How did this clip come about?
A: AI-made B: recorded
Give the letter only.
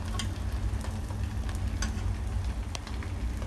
B